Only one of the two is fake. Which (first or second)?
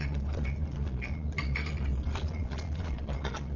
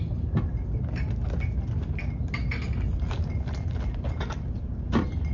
first